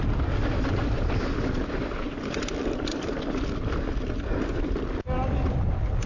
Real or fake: real